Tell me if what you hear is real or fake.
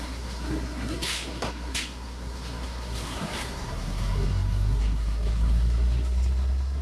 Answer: fake